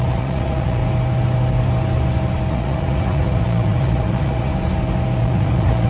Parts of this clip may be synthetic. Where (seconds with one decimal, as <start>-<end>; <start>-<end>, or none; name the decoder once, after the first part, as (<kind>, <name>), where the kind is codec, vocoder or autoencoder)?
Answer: 0.0-0.8 (vocoder, Vocos); 2.5-4.5; 5.2-5.9